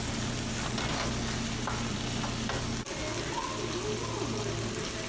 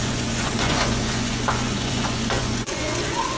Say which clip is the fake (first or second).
second